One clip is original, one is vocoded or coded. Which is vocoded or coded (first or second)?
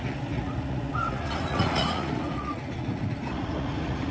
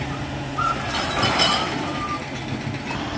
first